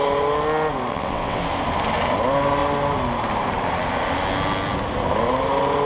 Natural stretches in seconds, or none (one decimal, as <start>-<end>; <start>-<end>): 0.0-0.9; 1.4-5.8